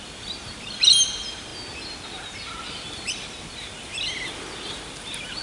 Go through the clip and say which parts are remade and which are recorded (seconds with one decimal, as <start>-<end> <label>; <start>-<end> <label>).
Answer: 0.0-5.4 recorded